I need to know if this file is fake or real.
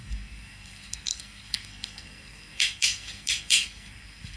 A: fake